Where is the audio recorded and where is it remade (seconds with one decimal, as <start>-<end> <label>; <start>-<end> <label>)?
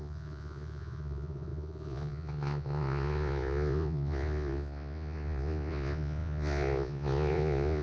0.0-7.8 remade